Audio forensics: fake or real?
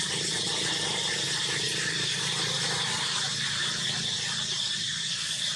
real